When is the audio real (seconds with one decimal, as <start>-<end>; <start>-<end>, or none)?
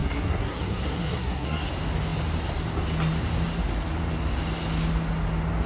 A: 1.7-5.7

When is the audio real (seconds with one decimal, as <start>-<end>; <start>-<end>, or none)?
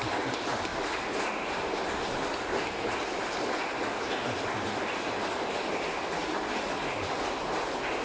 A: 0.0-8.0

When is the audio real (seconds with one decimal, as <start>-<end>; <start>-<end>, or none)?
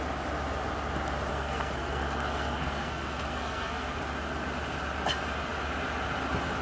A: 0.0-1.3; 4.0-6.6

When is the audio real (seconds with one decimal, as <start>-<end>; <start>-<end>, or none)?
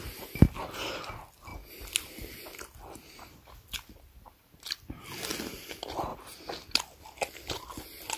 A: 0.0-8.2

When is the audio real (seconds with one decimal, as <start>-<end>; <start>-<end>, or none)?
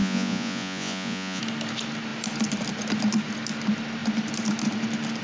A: 1.4-5.2